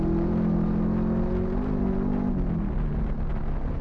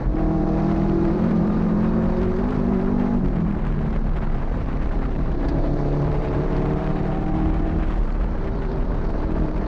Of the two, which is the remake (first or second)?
second